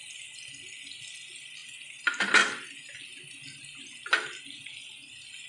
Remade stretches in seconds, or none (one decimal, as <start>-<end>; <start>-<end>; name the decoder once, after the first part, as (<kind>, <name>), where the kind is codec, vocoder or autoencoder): none